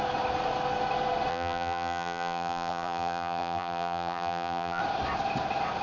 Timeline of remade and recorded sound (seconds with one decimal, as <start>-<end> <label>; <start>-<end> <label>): 0.0-1.3 recorded; 1.3-4.8 remade; 4.8-5.8 recorded